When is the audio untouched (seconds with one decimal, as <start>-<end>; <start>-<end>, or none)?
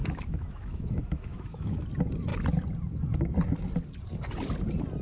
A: 1.8-5.0